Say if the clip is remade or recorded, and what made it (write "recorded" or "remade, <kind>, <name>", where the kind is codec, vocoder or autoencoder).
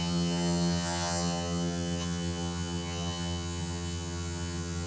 remade, vocoder, HiFi-GAN